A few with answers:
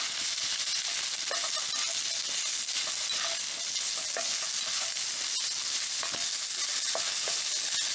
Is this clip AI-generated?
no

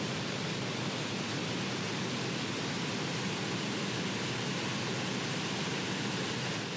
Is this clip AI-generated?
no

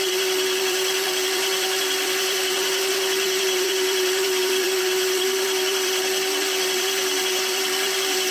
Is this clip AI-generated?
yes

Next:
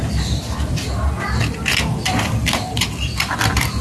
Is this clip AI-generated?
yes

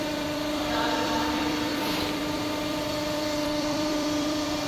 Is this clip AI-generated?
yes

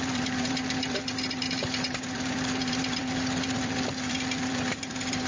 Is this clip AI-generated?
yes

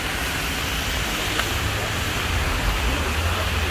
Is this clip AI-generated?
no